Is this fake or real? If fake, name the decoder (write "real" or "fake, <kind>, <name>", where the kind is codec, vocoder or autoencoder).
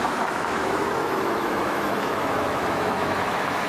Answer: fake, autoencoder, DAC-VAE